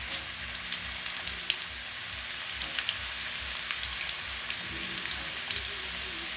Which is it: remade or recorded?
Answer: recorded